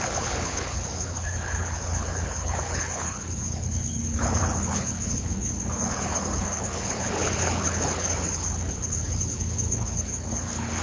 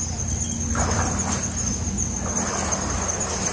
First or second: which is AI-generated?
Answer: first